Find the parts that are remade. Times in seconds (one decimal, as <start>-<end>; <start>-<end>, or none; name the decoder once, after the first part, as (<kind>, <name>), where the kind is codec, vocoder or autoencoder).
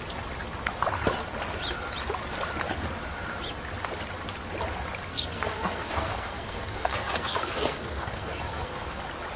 5.1-9.0 (codec, SNAC)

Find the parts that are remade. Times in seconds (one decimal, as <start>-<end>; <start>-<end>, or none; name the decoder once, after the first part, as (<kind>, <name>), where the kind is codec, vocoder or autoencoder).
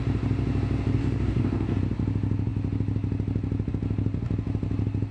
1.0-1.8 (codec, DAC)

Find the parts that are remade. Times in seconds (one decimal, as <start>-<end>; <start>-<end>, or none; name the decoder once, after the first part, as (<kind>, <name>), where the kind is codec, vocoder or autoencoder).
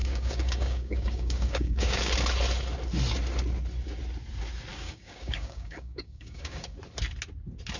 0.0-2.1 (codec, DAC); 4.7-6.8